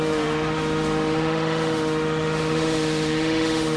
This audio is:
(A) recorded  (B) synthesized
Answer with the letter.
B